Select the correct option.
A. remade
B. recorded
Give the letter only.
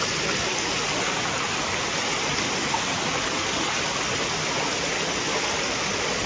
B